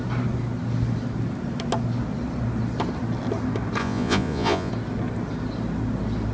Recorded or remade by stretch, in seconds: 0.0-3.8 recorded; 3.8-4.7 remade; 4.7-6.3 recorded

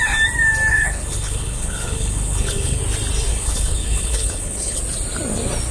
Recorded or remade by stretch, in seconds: 0.0-0.7 recorded; 0.7-2.8 remade; 2.8-3.3 recorded; 3.3-4.8 remade; 4.8-5.7 recorded

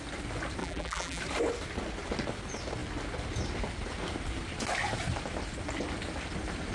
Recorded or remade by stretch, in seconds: 0.0-0.6 recorded; 0.6-1.2 remade; 1.2-6.7 recorded

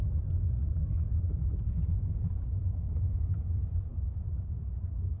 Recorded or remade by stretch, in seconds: 0.0-2.6 recorded; 2.6-3.3 remade; 3.3-5.2 recorded

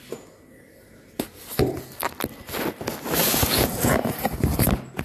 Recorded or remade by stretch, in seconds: 0.0-3.2 recorded; 3.2-4.3 remade; 4.3-5.0 recorded

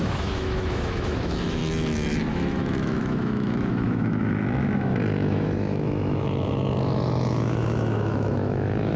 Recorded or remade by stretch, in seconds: 0.0-1.6 remade; 1.6-2.3 recorded; 2.3-9.0 remade